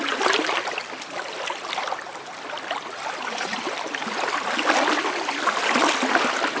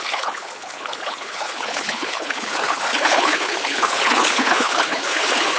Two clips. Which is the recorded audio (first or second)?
first